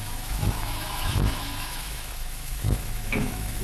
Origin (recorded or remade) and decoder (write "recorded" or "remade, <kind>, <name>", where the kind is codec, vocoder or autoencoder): remade, autoencoder, DAC-VAE